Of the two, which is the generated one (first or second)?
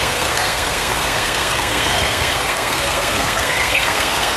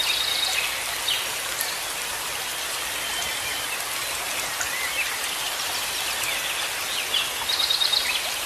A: first